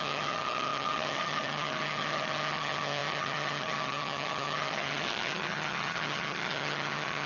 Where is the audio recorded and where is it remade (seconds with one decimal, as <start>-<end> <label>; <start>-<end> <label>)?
0.0-7.3 remade